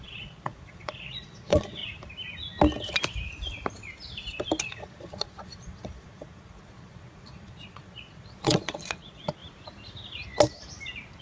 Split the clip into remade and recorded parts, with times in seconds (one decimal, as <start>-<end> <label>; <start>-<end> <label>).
0.0-1.8 remade; 1.8-4.6 recorded; 4.6-9.4 remade; 9.4-11.2 recorded